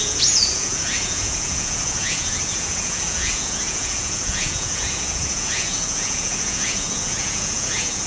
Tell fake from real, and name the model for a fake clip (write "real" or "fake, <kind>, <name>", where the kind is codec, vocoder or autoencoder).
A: fake, vocoder, Vocos